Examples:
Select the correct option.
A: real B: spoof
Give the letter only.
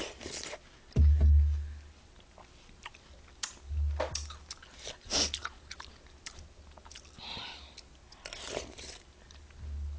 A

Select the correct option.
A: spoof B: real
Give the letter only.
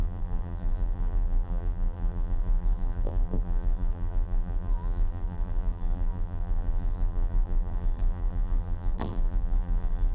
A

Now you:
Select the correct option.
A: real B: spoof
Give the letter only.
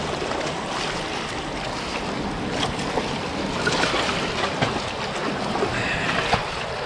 A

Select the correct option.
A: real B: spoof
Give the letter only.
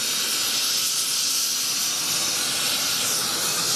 B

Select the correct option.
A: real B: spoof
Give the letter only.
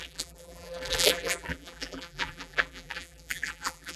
B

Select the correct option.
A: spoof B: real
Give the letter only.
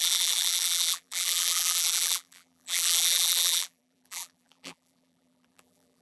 A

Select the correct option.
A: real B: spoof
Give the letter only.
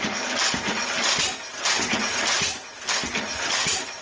A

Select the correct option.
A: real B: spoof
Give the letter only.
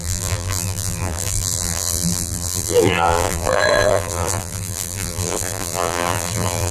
B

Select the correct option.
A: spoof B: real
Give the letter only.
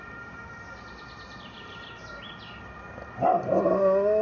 B